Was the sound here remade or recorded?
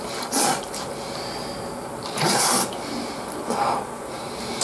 recorded